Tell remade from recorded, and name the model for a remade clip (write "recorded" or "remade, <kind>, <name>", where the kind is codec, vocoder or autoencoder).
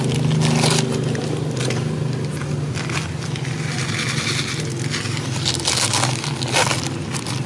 recorded